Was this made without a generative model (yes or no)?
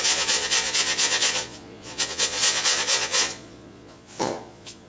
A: no